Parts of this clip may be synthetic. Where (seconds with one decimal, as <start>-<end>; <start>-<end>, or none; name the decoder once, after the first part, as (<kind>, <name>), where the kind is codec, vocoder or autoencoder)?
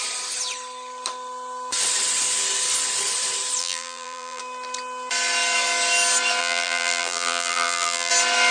3.6-4.4 (vocoder, BigVGAN v2); 6.4-8.1